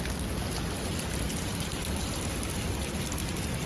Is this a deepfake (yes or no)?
no